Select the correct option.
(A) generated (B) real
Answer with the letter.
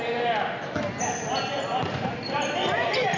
B